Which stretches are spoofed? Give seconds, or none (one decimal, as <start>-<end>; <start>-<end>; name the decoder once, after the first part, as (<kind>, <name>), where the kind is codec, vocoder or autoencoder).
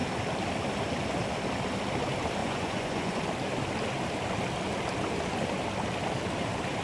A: 2.4-3.2 (vocoder, Vocos)